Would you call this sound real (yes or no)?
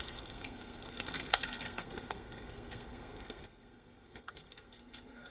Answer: no